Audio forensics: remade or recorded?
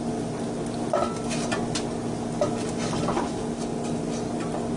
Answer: recorded